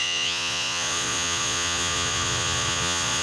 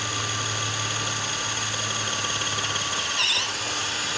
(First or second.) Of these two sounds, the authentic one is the second